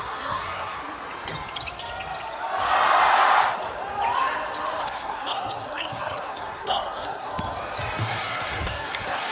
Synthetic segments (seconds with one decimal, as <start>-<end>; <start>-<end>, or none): 0.0-0.8; 4.8-7.3; 8.0-9.3